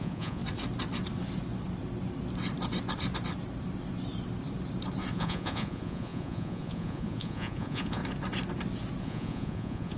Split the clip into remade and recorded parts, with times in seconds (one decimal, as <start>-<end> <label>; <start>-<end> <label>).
0.0-0.4 remade; 0.4-5.1 recorded; 5.1-8.0 remade; 8.0-9.0 recorded; 9.0-10.0 remade